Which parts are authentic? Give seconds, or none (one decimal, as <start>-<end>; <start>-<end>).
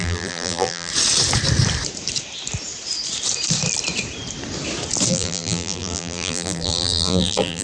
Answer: 0.9-5.1